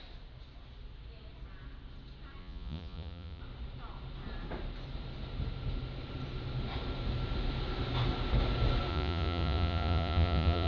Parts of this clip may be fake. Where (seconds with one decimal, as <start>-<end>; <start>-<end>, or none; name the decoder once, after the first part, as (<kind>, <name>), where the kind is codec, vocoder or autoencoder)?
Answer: 2.4-3.4 (vocoder, Vocos); 8.9-10.7